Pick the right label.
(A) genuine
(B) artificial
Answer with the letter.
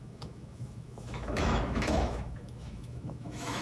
B